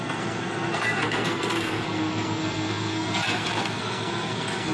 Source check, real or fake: fake